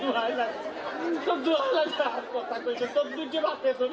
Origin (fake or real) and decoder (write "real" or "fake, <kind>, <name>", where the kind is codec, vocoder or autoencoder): real